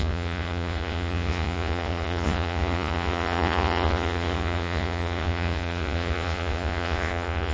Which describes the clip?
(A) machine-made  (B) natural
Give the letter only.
A